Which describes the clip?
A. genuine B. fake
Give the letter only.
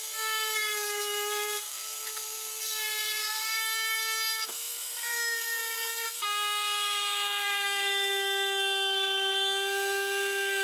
B